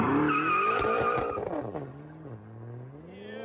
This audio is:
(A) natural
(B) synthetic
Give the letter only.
A